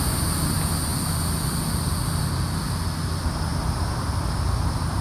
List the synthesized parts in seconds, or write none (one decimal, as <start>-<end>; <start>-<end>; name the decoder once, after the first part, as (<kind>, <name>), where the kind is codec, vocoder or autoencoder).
none